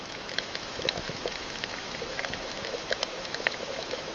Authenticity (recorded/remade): remade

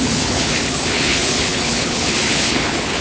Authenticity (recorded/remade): remade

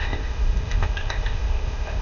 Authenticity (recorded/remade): remade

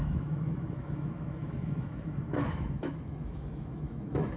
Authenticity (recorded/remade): remade